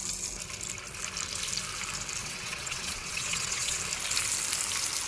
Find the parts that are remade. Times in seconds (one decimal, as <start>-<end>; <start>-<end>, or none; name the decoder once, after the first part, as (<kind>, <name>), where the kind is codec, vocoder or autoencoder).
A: 2.2-3.8 (vocoder, WaveNeXt)